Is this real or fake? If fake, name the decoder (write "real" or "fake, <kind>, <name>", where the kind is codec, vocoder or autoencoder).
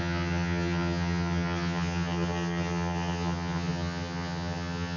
fake, vocoder, HiFi-GAN